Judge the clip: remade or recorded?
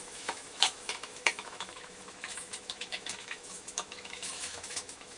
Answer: remade